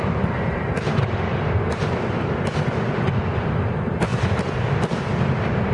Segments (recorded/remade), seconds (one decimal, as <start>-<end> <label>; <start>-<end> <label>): 0.0-5.7 recorded